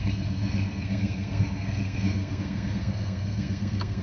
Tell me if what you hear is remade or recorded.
remade